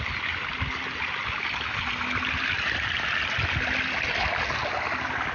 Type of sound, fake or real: real